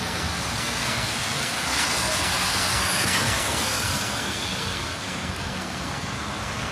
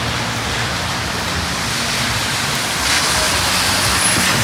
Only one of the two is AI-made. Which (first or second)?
first